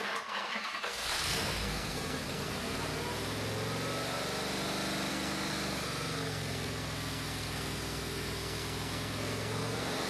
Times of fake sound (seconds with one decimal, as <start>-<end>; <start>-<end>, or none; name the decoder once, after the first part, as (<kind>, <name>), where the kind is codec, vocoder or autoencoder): 0.0-2.9 (codec, SNAC); 5.1-10.1